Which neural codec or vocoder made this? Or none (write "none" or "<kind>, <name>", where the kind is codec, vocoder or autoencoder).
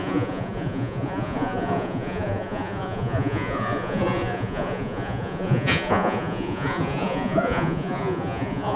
vocoder, Vocos